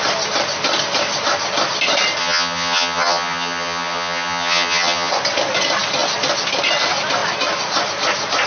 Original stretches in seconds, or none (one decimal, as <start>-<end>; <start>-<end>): 0.0-2.2; 5.1-8.5